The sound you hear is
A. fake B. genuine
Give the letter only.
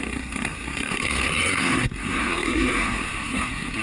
A